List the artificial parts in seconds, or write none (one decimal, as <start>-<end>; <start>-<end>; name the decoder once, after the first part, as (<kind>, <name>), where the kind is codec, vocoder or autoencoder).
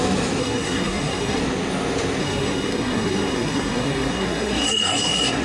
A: 0.4-1.4 (codec, SNAC); 2.2-5.4